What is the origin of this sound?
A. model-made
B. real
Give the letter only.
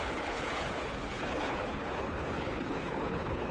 A